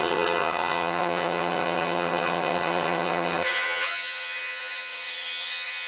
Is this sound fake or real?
fake